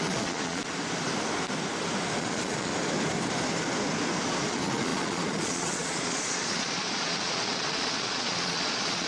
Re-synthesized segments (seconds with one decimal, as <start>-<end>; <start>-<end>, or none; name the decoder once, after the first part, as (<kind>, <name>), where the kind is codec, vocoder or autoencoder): 0.0-0.6 (vocoder, Vocos); 2.2-2.7; 4.5-9.1